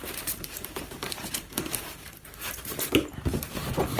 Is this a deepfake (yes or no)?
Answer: yes